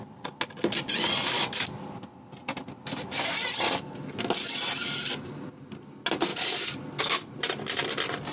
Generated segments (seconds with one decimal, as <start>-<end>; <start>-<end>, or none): none